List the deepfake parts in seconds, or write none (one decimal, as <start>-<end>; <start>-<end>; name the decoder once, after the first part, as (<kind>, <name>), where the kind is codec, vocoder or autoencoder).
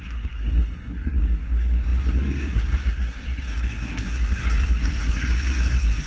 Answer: 0.0-6.1 (codec, SNAC)